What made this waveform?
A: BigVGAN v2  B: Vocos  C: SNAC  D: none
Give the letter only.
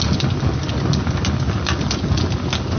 D